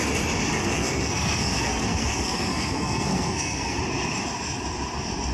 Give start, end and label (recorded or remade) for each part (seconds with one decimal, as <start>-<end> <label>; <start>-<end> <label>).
0.0-0.6 recorded; 0.6-3.8 remade; 3.8-5.3 recorded